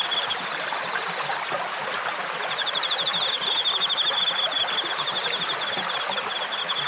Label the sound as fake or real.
real